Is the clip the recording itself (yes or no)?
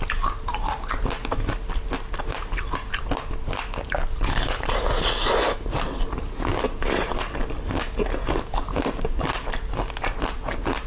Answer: yes